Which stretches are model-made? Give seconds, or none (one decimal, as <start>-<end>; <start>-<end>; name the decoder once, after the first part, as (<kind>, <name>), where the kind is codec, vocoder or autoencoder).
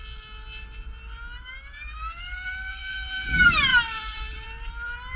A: 2.2-5.2 (vocoder, BigVGAN v2)